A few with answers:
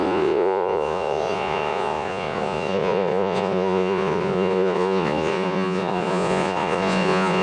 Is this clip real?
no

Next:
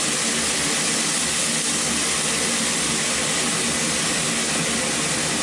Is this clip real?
yes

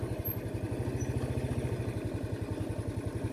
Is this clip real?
yes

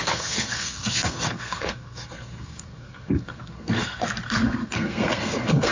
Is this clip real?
no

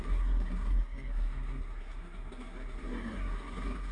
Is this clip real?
no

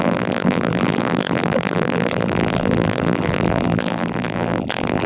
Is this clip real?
no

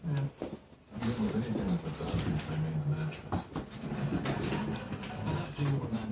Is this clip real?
yes